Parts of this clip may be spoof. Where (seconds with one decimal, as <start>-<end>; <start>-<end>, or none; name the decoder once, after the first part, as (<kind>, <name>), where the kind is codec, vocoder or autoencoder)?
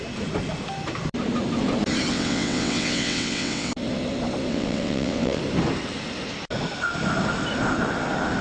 2.1-3.7 (vocoder, WaveNeXt); 4.5-5.4